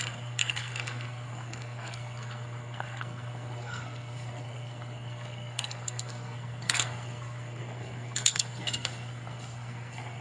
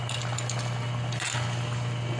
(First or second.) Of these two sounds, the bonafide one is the second